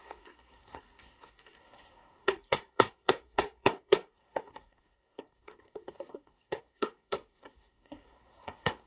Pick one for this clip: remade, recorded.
remade